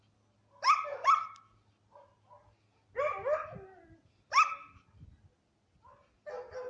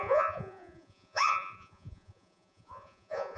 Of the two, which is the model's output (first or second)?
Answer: second